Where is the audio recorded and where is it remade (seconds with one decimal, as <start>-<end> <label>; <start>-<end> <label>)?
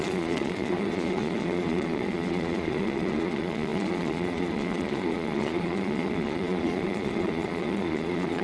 0.0-8.4 remade